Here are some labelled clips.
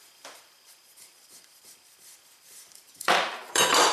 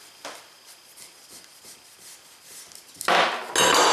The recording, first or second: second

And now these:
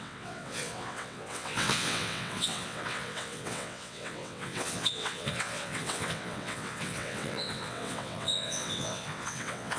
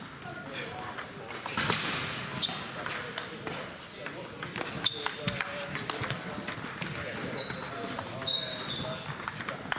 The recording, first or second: second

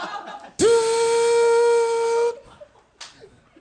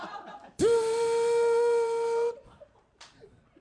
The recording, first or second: first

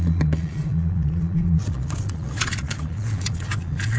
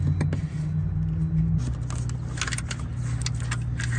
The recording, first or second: second